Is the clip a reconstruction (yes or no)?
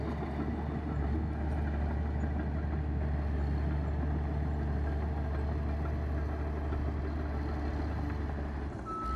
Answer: no